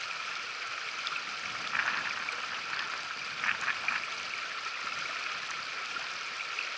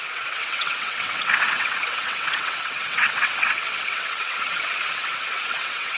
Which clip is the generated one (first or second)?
second